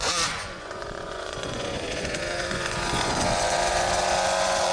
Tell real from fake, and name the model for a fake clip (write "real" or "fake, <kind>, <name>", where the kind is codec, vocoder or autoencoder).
fake, vocoder, Vocos